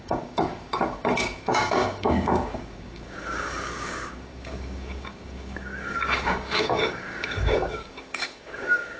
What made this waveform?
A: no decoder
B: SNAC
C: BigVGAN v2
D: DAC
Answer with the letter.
D